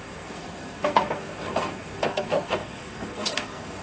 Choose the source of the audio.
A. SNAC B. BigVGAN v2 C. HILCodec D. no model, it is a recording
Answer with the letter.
A